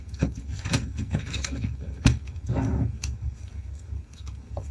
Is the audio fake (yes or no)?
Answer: yes